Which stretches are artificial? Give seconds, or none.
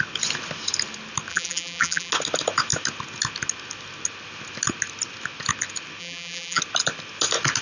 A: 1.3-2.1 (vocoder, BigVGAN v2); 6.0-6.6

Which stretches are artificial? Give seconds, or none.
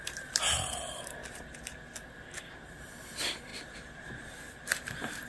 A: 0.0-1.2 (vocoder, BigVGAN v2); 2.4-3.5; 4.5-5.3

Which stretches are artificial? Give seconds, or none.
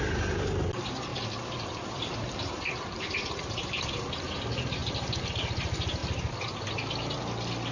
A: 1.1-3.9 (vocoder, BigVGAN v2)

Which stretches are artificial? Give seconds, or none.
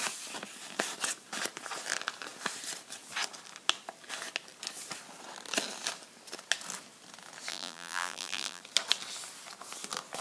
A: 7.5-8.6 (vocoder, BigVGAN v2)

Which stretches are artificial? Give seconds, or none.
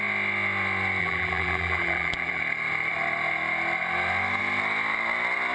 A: 1.0-2.4 (vocoder, BigVGAN v2)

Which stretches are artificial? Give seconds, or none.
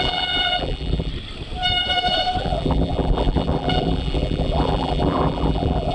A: 0.0-1.1 (vocoder, BigVGAN v2); 2.4-5.9